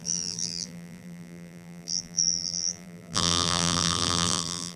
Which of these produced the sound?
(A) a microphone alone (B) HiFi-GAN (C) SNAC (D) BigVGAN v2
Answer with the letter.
D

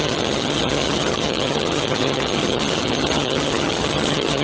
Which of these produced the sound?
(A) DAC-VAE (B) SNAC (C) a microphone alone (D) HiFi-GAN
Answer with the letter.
D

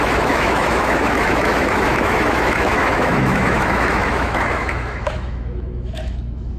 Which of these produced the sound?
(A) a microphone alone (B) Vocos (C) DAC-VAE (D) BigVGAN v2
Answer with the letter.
C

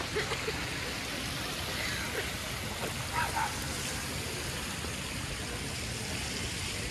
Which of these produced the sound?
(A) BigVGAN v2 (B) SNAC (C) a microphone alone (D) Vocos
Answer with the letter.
C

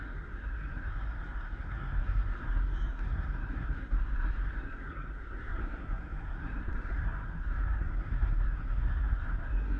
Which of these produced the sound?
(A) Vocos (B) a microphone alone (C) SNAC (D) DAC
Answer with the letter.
C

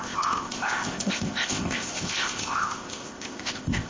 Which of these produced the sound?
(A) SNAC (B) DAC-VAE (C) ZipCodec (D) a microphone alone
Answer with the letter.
C